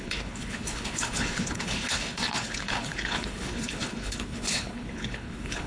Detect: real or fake fake